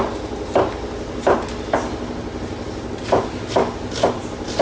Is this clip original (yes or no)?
yes